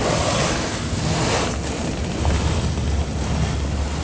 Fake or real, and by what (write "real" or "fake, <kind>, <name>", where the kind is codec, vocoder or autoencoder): real